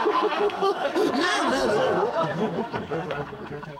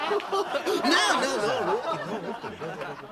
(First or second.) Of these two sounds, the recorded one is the second